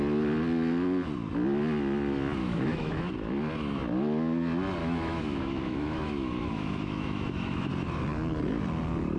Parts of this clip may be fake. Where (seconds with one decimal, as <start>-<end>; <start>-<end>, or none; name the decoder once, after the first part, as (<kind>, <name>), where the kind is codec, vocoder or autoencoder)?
2.4-3.1 (autoencoder, DAC-VAE); 4.8-7.7